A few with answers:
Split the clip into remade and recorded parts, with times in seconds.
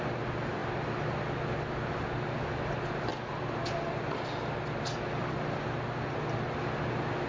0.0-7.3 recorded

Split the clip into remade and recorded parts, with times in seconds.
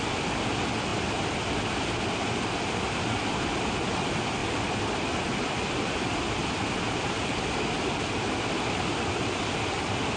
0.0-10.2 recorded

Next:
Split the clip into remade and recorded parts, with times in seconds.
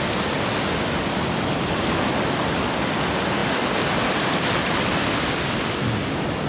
0.0-6.5 recorded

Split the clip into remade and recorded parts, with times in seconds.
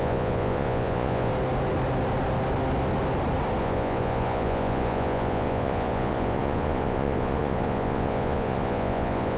0.0-1.3 remade; 1.3-3.6 recorded; 3.6-9.4 remade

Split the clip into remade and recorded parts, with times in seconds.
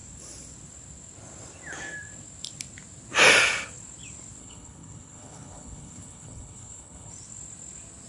0.0-4.4 recorded; 4.4-7.1 remade; 7.1-8.1 recorded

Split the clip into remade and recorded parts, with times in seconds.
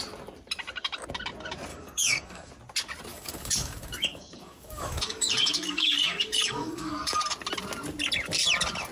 0.0-1.7 recorded; 1.7-2.5 remade; 2.5-3.1 recorded; 3.1-7.2 remade; 7.2-8.9 recorded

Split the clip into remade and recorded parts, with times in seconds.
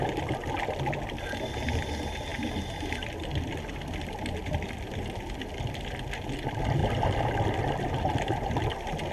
0.0-9.1 recorded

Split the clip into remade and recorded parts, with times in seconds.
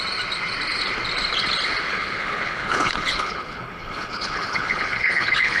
0.0-1.9 recorded; 1.9-5.6 remade